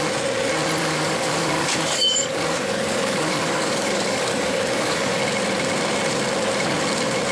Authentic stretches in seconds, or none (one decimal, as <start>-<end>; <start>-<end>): 0.0-0.8; 5.2-7.3